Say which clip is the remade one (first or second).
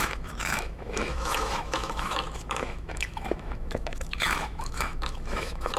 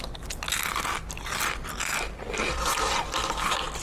first